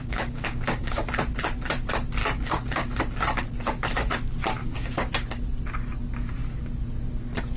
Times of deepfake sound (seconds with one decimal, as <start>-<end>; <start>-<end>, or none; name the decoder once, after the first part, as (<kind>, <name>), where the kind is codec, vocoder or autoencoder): 0.0-1.1 (codec, DAC); 2.2-3.0; 4.6-5.1